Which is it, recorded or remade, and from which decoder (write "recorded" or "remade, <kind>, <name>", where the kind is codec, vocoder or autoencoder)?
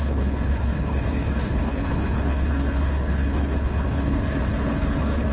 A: remade, codec, HILCodec